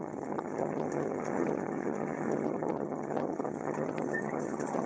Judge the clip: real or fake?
fake